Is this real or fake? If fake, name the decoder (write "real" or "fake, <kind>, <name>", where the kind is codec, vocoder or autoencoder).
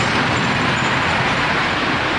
real